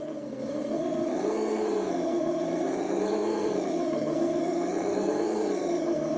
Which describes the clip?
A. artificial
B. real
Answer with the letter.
A